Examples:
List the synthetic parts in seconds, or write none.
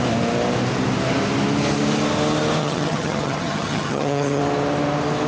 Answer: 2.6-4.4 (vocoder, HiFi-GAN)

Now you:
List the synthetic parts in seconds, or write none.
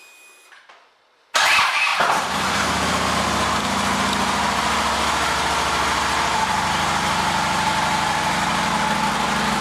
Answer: none